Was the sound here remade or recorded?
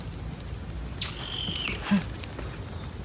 recorded